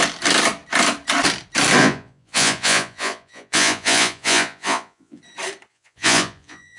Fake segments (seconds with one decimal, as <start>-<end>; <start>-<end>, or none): 1.8-5.2; 5.7-6.8

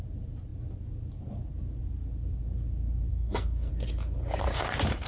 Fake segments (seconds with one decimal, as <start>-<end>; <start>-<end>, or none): 3.1-3.7

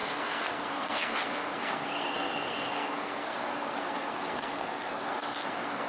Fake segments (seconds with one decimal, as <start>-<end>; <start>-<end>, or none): 0.0-5.9

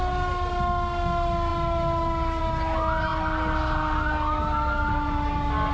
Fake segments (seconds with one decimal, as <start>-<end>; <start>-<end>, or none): none

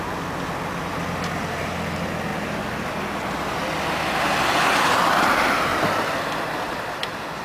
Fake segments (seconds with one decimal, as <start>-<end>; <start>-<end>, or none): 5.7-6.6